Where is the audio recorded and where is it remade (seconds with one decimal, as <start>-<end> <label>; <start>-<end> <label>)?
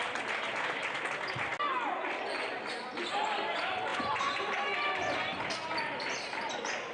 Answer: 0.0-3.9 recorded; 3.9-4.4 remade; 4.4-6.9 recorded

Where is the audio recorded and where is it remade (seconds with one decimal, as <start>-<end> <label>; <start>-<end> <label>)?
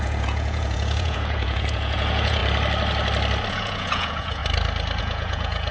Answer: 0.0-2.4 remade; 2.4-3.5 recorded; 3.5-4.4 remade; 4.4-5.0 recorded; 5.0-5.7 remade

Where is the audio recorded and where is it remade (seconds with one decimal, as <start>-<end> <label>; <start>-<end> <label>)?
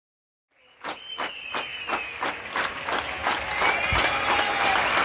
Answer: 0.0-5.0 recorded